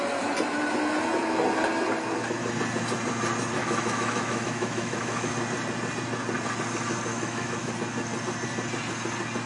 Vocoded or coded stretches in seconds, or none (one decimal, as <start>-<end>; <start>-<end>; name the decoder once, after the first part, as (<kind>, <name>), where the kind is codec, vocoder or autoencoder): 3.6-5.3 (autoencoder, DAC-VAE); 7.1-7.7